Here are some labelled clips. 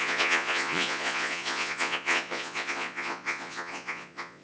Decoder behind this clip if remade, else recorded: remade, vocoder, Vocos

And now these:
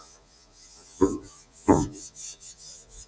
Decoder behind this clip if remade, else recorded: remade, vocoder, Vocos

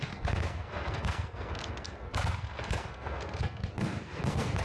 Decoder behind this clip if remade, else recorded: remade, codec, SNAC